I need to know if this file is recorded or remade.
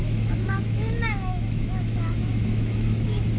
remade